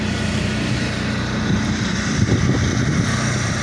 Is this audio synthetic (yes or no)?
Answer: yes